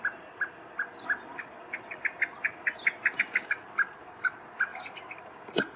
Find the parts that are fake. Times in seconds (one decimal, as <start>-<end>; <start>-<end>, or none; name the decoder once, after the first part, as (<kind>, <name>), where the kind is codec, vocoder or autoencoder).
none